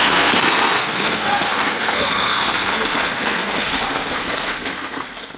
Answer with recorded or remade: remade